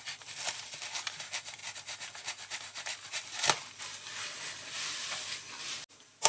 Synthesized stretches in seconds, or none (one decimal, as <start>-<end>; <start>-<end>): none